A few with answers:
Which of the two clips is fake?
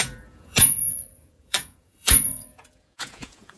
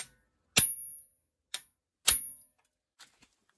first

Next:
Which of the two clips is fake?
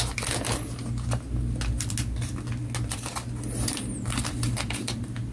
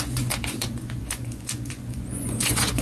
second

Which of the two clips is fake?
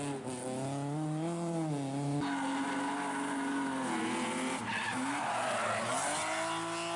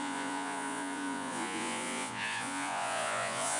second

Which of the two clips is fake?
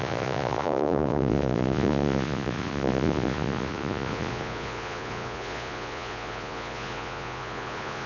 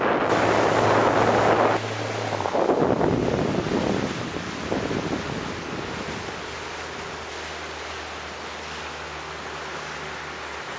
first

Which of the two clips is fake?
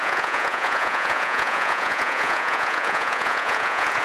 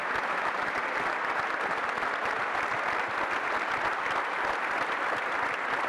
first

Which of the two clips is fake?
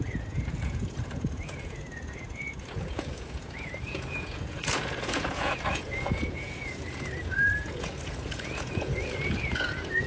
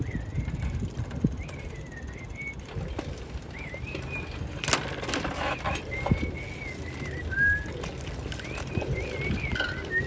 first